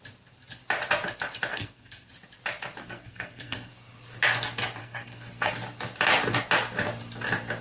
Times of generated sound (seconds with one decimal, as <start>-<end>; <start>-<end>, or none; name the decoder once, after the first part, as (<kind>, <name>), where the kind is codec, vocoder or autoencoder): 1.5-2.1 (codec, SNAC); 2.8-3.7; 4.8-5.5